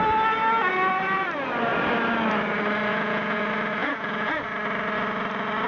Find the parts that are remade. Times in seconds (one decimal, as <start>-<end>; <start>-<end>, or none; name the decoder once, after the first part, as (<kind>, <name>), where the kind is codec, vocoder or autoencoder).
2.9-3.4 (vocoder, Vocos); 3.8-4.3